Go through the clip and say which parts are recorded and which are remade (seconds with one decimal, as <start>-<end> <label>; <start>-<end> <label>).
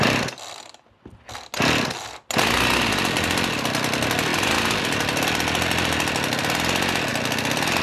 0.0-4.3 recorded; 4.3-5.2 remade; 5.2-7.8 recorded